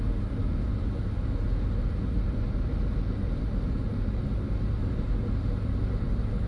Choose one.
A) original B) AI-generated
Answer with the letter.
A